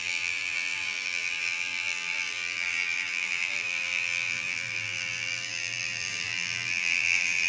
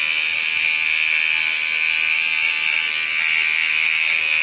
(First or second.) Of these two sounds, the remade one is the first